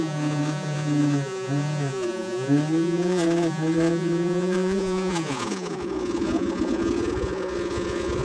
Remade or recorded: remade